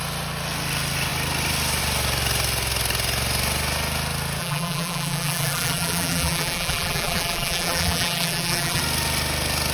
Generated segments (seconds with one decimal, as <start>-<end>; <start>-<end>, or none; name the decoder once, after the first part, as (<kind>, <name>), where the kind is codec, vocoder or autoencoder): 4.4-8.8 (vocoder, BigVGAN v2)